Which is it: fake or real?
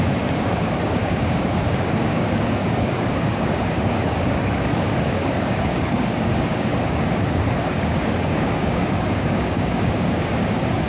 fake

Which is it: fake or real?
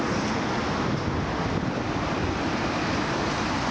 real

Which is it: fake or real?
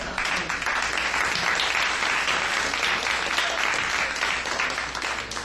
real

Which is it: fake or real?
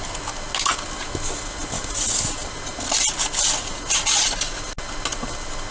real